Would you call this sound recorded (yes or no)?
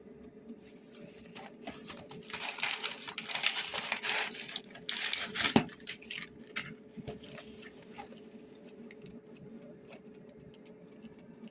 yes